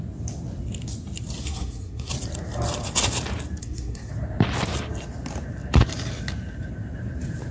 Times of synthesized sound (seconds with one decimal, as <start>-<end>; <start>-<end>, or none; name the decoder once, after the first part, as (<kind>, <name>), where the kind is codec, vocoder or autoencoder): 1.4-2.1 (codec, SNAC); 3.6-4.1